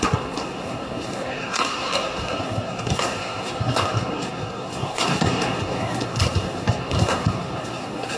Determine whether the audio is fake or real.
fake